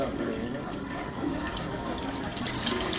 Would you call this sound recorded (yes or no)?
no